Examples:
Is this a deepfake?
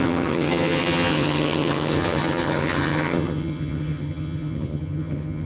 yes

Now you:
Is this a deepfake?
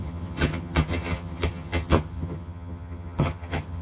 yes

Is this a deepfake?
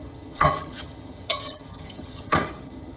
yes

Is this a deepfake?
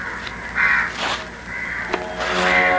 no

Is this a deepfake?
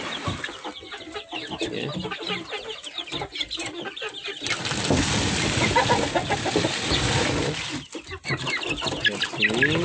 no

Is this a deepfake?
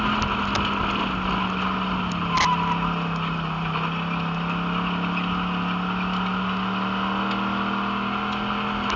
no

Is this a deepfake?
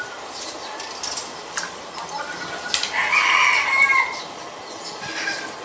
no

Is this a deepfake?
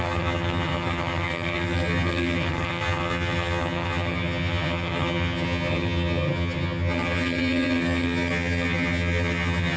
yes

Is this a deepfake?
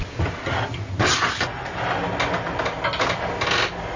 no